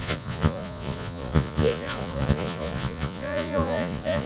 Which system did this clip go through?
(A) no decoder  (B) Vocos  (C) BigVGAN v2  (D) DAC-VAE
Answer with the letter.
B